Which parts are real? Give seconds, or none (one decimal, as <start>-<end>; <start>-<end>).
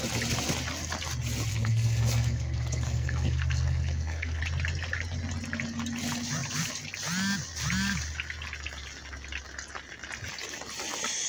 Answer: 0.0-1.5; 4.4-11.3